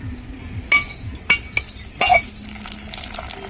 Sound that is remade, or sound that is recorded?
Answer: recorded